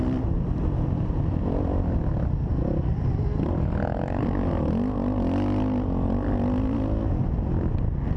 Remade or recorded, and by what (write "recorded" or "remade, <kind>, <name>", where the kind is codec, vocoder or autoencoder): recorded